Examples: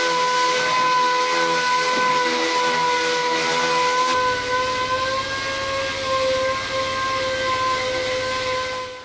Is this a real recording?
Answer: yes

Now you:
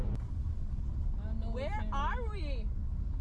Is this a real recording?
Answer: yes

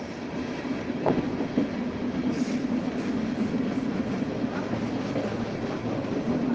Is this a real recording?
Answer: yes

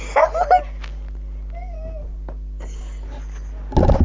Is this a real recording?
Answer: yes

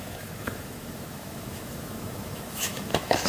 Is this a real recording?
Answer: no